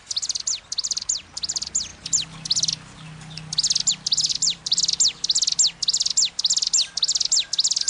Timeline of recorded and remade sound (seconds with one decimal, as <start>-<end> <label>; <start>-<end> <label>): 0.0-4.3 recorded; 4.3-4.8 remade; 4.8-7.9 recorded